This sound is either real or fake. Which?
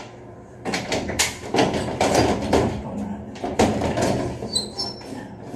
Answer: fake